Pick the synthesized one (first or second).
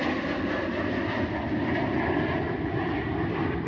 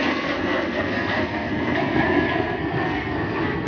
second